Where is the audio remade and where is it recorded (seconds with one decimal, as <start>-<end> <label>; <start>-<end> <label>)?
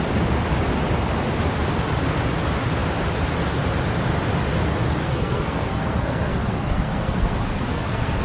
0.0-5.0 recorded; 5.0-8.2 remade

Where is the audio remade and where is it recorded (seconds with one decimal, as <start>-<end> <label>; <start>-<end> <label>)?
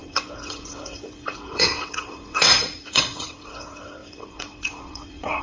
0.0-5.4 remade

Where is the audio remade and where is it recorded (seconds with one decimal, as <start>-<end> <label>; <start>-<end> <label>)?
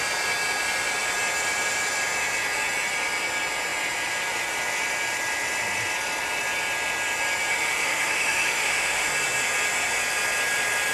0.0-7.5 recorded; 7.5-9.1 remade; 9.1-10.9 recorded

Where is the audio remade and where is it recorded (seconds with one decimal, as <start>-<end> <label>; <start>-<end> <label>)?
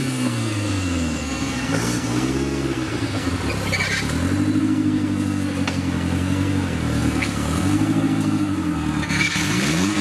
0.0-3.3 remade; 3.3-4.6 recorded; 4.6-10.0 remade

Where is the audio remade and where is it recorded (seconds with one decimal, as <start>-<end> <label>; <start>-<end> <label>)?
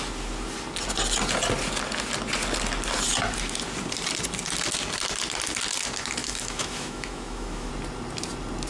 0.0-6.2 recorded; 6.2-7.7 remade; 7.7-8.7 recorded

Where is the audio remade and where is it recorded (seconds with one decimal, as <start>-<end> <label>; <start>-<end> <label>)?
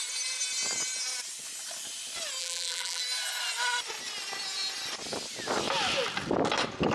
0.0-2.4 recorded; 2.4-3.0 remade; 3.0-6.9 recorded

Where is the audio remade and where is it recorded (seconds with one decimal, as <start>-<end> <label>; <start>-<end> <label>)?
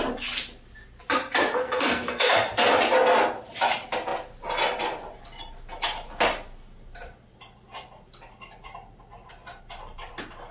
0.0-1.6 recorded; 1.6-2.2 remade; 2.2-10.5 recorded